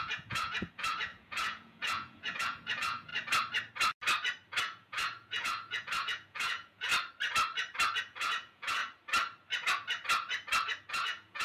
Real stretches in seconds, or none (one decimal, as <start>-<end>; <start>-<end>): 3.1-4.6; 6.9-8.0; 8.8-10.9